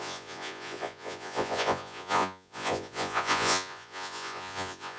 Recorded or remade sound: remade